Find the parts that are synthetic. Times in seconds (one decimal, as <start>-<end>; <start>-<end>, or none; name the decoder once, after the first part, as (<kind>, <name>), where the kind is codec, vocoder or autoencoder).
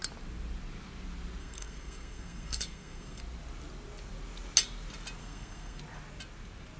1.4-3.2 (codec, SNAC); 5.2-5.8